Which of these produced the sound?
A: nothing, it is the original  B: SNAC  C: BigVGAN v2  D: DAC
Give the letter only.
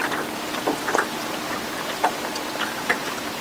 C